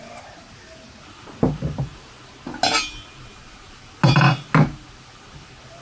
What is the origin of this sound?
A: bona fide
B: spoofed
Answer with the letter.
A